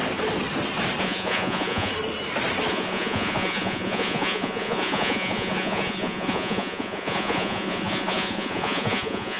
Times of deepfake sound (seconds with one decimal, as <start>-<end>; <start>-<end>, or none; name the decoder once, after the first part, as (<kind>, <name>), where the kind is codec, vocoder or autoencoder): 1.0-1.9 (vocoder, Vocos); 2.7-9.4